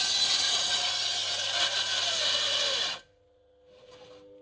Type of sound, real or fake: real